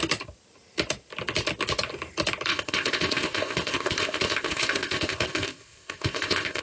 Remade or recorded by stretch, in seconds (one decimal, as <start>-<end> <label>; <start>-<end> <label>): 0.0-2.5 recorded; 2.5-6.6 remade